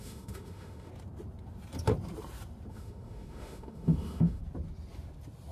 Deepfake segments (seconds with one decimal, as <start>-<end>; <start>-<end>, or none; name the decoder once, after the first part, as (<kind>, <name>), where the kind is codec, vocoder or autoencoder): 0.0-0.9 (autoencoder, DAC-VAE); 2.7-4.4